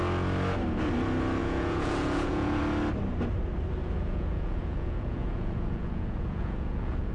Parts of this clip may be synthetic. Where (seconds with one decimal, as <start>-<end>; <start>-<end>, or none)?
1.4-2.6; 3.8-7.1